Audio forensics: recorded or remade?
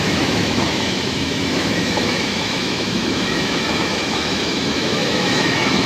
remade